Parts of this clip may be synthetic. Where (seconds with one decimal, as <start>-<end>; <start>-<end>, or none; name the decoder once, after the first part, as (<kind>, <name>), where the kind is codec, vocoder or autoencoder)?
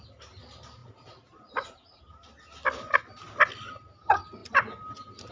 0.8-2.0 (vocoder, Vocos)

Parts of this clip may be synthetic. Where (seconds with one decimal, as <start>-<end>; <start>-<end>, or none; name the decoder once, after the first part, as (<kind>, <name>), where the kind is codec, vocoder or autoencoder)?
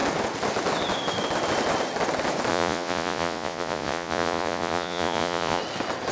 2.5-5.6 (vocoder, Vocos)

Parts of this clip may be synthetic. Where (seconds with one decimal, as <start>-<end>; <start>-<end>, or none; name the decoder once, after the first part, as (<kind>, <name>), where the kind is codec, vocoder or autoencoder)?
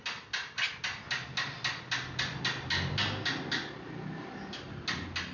none